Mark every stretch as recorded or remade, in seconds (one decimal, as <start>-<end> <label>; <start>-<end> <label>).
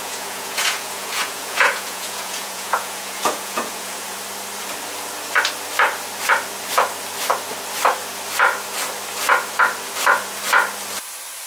0.0-4.2 remade; 4.2-11.5 recorded